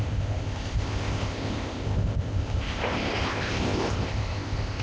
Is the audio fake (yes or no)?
yes